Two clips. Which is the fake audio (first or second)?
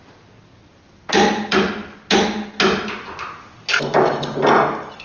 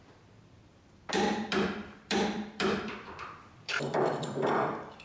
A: second